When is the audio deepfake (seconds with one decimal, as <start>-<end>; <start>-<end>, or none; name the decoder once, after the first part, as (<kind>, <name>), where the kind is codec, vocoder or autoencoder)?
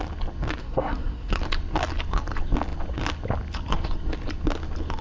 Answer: 0.6-1.3 (codec, SNAC)